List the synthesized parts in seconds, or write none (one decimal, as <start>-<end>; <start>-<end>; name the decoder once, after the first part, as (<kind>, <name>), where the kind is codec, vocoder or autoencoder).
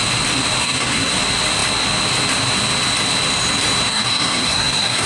0.6-1.1 (codec, SNAC); 3.9-5.1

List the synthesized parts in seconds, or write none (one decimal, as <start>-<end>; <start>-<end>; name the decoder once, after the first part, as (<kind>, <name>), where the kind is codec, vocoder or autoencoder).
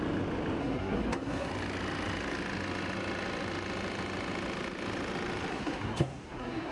0.6-1.5 (codec, SNAC); 5.5-6.7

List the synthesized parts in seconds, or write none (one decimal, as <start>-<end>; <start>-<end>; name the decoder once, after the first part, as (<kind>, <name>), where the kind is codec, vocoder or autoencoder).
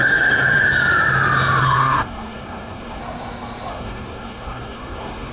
0.0-0.6 (codec, SNAC); 1.6-3.0; 3.7-5.3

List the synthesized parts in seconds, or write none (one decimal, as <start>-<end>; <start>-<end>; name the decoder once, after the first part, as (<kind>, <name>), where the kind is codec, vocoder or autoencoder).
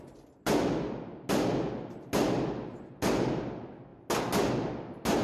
none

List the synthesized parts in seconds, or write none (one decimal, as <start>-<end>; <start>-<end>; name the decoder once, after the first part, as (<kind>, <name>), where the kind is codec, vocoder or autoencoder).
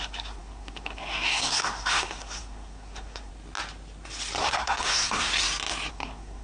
0.0-3.3 (codec, SNAC); 4.4-5.3; 5.9-6.4